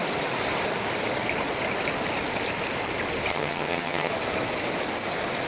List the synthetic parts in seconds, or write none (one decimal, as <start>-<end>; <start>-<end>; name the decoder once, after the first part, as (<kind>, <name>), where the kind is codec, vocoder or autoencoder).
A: 3.3-4.1 (vocoder, HiFi-GAN)